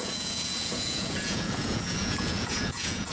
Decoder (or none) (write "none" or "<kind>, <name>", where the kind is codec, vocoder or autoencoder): vocoder, Vocos